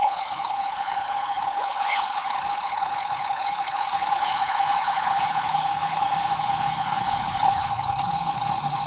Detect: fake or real fake